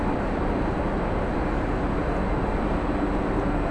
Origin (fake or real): real